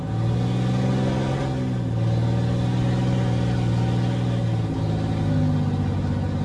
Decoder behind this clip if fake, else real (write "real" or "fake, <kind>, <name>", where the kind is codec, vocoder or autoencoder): real